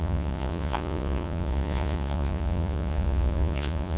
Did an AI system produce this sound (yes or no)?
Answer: yes